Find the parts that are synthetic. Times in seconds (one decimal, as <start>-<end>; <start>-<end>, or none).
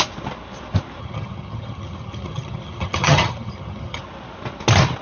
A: 1.0-4.0